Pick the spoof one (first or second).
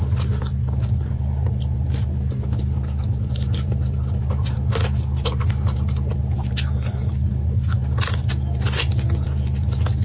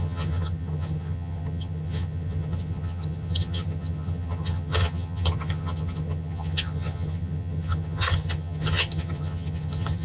second